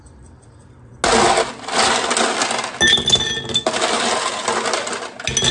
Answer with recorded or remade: recorded